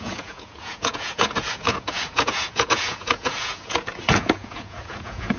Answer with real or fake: fake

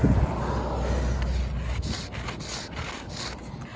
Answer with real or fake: real